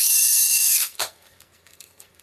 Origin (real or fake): fake